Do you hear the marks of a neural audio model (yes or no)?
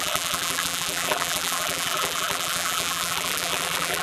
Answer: yes